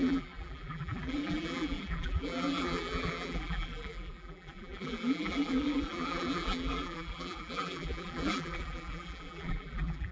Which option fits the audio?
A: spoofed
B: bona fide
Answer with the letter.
A